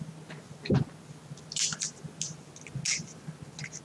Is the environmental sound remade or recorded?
recorded